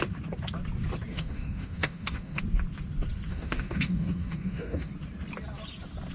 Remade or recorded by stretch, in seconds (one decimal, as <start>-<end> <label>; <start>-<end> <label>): 0.0-1.1 recorded; 1.1-2.4 remade; 2.4-3.3 recorded; 3.3-4.9 remade; 4.9-6.1 recorded